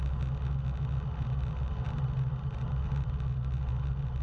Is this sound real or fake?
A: real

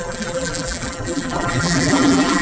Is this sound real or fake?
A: fake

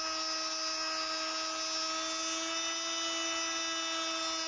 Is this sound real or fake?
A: real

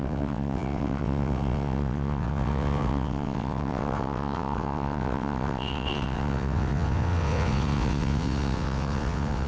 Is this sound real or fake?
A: fake